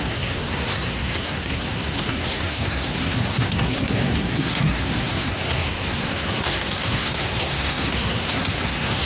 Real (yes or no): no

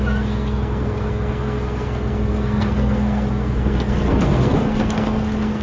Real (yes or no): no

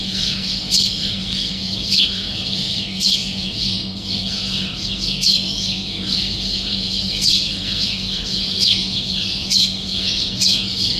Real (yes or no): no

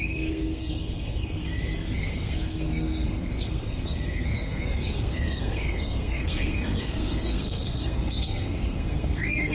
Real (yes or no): no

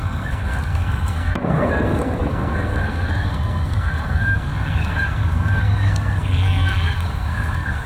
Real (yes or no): no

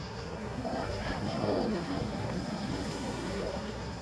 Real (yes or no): no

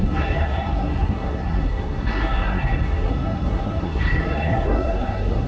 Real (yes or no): no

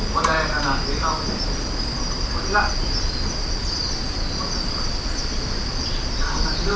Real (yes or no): yes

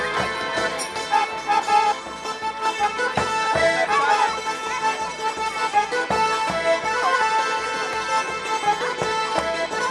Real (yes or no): yes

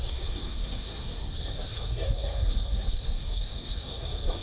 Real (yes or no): no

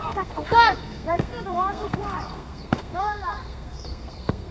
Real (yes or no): no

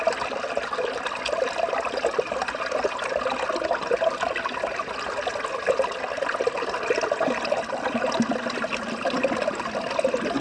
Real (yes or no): yes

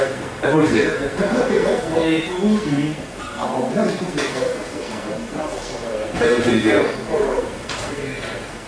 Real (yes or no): no